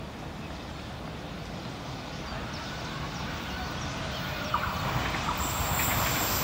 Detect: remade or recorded recorded